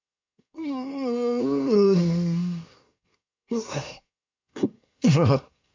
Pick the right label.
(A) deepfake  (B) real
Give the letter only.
A